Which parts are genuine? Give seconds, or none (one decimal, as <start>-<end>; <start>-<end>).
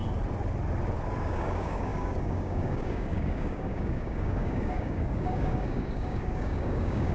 0.0-1.2